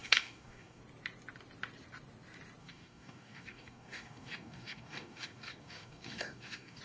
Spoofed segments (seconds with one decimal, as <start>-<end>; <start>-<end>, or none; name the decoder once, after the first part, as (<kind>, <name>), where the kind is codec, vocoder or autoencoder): 0.0-0.8 (codec, DAC); 2.6-6.8